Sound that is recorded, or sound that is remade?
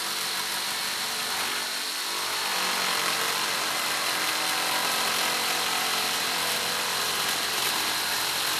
recorded